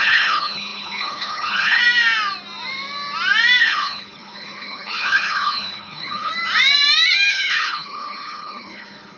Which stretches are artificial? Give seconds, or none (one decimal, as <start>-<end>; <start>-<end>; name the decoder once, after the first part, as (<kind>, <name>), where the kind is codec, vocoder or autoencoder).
0.0-1.8 (codec, HILCodec); 3.6-6.3; 7.3-9.2